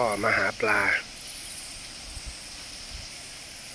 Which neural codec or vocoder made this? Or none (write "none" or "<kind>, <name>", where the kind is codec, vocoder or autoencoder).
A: none